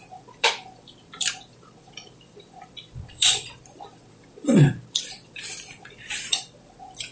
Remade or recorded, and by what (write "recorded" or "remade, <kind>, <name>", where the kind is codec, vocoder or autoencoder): remade, vocoder, BigVGAN v2